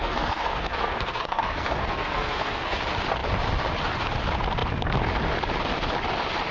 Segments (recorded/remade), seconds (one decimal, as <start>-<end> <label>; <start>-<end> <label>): 0.0-2.8 remade; 2.8-6.5 recorded